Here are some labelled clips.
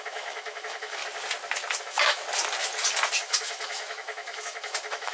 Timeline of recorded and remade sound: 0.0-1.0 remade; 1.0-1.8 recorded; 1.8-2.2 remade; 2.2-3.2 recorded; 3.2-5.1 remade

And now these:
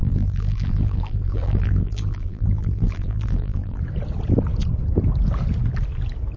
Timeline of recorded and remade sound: 0.0-3.8 remade; 3.8-6.4 recorded

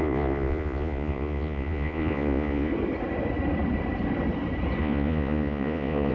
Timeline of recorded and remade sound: 0.0-2.7 remade; 2.7-4.8 recorded; 4.8-6.1 remade

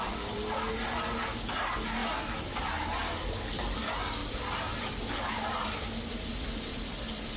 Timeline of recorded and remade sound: 0.0-7.4 recorded